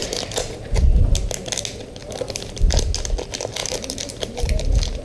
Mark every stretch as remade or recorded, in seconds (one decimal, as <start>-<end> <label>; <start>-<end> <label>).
0.0-0.9 remade; 0.9-3.6 recorded; 3.6-5.0 remade

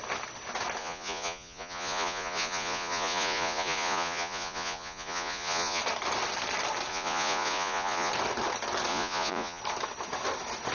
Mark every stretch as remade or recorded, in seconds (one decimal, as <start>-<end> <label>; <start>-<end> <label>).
0.0-0.8 recorded; 0.8-5.8 remade; 5.8-6.9 recorded; 6.9-8.1 remade; 8.1-8.9 recorded; 8.9-9.6 remade; 9.6-10.7 recorded

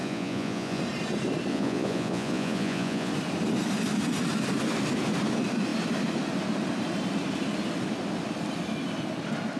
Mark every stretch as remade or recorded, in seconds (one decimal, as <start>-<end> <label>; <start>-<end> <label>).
0.0-0.8 remade; 0.8-1.5 recorded; 1.5-3.1 remade; 3.1-9.6 recorded

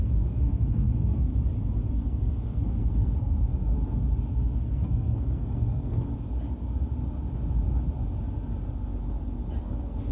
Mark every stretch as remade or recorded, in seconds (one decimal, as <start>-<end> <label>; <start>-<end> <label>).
0.0-1.3 remade; 1.3-1.9 recorded; 1.9-3.8 remade; 3.8-4.3 recorded; 4.3-6.1 remade; 6.1-9.6 recorded; 9.6-10.1 remade

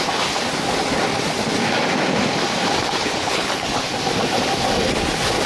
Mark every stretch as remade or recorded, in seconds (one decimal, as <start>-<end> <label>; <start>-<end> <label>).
0.0-3.0 recorded; 3.0-3.8 remade; 3.8-5.5 recorded

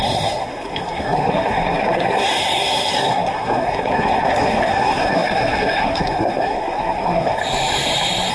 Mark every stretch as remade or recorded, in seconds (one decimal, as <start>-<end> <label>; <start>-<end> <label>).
0.0-7.4 remade; 7.4-8.3 recorded

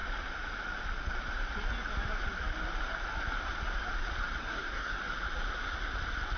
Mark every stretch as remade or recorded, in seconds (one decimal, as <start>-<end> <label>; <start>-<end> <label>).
0.0-4.4 recorded; 4.4-5.0 remade; 5.0-6.4 recorded